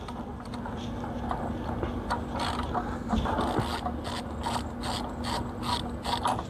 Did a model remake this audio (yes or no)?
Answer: no